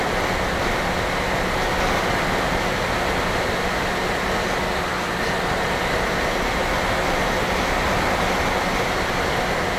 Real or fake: real